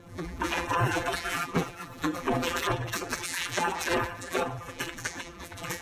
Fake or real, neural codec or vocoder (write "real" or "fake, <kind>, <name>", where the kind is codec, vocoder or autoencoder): fake, vocoder, BigVGAN v2